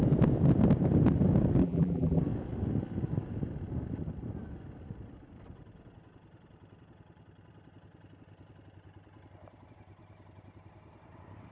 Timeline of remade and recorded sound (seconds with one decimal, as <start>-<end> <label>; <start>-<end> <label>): 0.0-1.6 recorded; 1.6-2.2 remade; 2.2-11.5 recorded